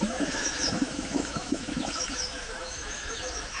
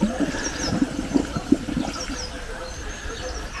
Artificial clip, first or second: first